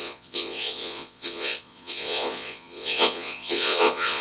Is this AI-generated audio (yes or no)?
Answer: yes